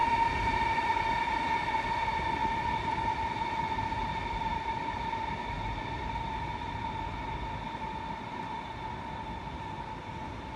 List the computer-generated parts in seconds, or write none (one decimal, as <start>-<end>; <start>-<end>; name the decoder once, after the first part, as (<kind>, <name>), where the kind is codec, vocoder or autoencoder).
0.0-0.8 (vocoder, BigVGAN v2); 4.0-7.3